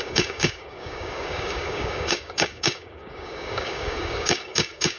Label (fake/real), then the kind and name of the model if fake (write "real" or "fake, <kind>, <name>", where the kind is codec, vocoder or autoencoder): fake, codec, DAC